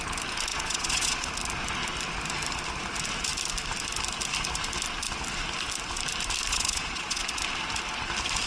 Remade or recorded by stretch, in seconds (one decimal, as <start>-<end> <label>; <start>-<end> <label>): 0.0-0.5 recorded; 0.5-1.3 remade; 1.3-6.5 recorded; 6.5-7.2 remade; 7.2-8.5 recorded